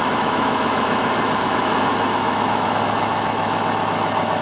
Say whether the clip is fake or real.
fake